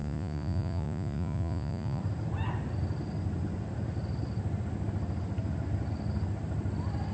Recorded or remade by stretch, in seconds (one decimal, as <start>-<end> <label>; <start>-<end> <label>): 0.0-2.0 remade; 2.0-7.1 recorded